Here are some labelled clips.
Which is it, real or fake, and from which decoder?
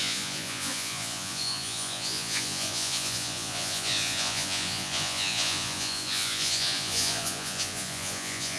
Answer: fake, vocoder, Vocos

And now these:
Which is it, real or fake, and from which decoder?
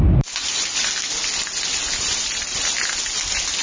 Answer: real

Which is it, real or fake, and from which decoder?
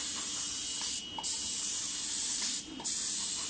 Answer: real